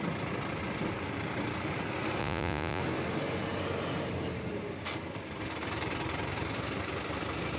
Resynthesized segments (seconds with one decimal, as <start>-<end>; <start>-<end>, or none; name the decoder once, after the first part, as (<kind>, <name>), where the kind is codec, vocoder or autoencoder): 2.2-2.8 (vocoder, Vocos)